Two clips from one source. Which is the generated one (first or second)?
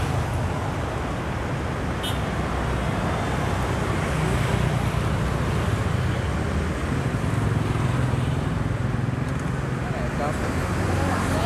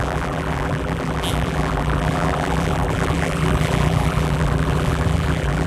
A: second